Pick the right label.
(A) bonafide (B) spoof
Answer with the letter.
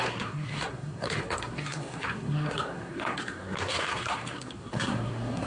B